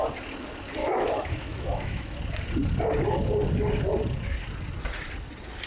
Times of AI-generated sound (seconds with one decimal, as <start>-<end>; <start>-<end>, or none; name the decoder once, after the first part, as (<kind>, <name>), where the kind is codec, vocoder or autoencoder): 0.8-2.2 (autoencoder, DAC-VAE)